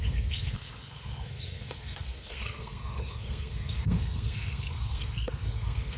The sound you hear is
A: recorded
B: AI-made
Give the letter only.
B